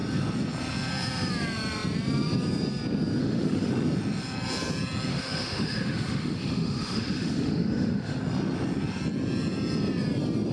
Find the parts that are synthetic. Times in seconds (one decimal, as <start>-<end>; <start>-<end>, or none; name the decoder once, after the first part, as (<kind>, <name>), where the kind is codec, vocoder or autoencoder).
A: 3.2-3.7 (autoencoder, DAC-VAE); 5.1-8.2